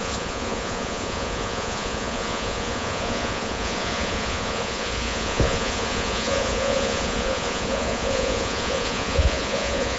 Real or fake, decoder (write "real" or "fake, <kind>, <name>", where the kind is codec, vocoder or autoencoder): fake, vocoder, Vocos